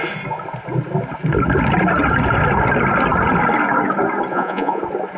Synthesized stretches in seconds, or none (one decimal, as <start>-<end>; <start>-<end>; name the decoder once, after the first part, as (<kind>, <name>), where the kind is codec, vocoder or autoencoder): 4.3-4.8 (vocoder, Vocos)

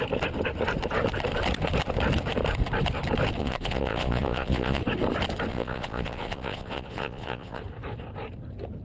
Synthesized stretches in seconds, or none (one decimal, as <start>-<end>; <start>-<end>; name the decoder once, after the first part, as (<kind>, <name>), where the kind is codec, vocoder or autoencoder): 3.4-4.8 (vocoder, Vocos); 5.5-7.6